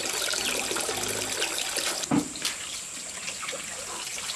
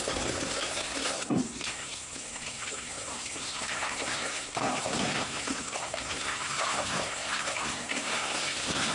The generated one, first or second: second